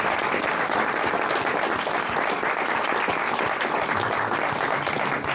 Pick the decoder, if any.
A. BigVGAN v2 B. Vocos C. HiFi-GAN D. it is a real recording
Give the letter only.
A